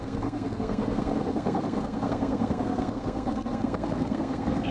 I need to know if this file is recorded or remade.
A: remade